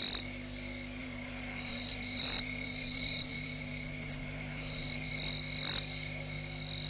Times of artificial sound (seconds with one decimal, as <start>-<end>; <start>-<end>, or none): 1.0-5.1